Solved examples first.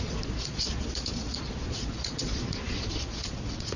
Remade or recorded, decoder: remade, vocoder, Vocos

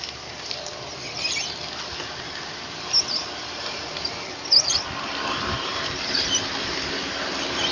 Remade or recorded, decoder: recorded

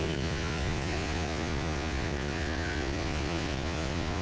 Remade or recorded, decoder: remade, vocoder, Vocos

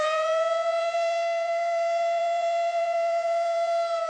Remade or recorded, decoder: remade, vocoder, Vocos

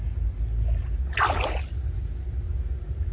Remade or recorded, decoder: recorded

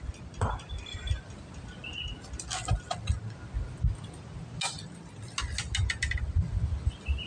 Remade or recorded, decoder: recorded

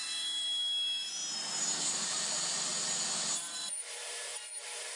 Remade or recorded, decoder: remade, vocoder, BigVGAN v2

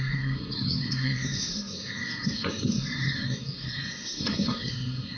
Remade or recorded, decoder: remade, codec, SNAC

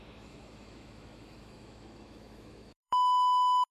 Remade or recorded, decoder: remade, autoencoder, DAC-VAE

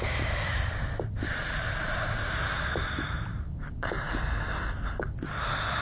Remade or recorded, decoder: remade, vocoder, BigVGAN v2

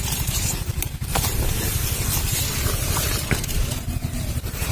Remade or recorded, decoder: remade, vocoder, BigVGAN v2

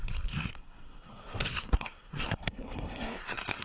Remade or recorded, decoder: remade, codec, SNAC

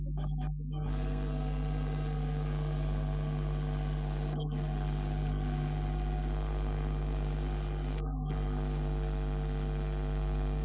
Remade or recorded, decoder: remade, codec, SNAC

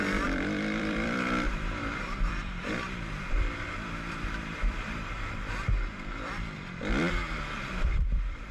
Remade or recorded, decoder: remade, vocoder, BigVGAN v2